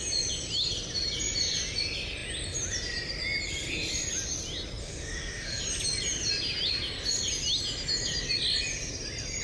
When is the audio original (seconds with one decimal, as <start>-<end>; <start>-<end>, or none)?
0.0-4.8; 5.6-9.4